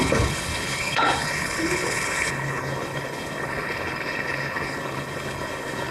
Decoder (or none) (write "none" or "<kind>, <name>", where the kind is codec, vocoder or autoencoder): codec, HILCodec